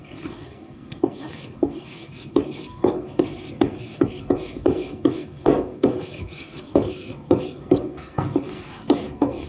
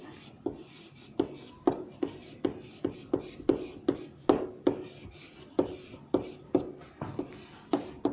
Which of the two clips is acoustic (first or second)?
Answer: second